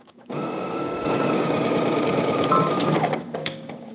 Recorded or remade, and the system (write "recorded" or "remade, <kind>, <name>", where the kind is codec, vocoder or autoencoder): remade, codec, DAC